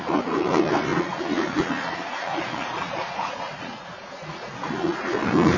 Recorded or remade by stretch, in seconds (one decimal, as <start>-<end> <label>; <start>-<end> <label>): 0.0-5.6 remade